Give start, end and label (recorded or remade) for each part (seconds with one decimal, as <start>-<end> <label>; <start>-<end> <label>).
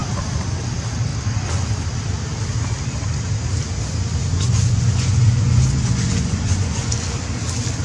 0.0-4.3 recorded; 4.3-6.9 remade; 6.9-7.8 recorded